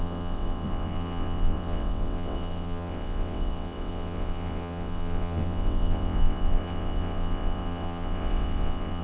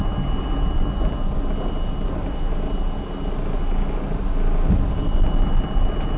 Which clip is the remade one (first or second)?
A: first